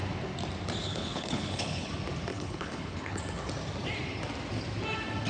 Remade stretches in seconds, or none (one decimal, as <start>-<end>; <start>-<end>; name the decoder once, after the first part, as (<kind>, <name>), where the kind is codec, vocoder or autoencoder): 0.8-1.9 (codec, HILCodec); 2.3-3.2

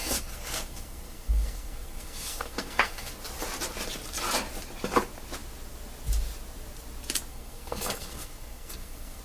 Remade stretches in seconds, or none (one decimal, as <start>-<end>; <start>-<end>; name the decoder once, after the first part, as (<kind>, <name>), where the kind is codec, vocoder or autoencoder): 0.0-3.1 (codec, SNAC); 7.3-9.2